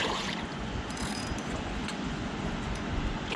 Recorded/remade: remade